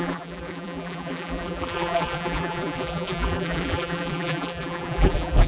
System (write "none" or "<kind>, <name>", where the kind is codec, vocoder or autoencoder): vocoder, BigVGAN v2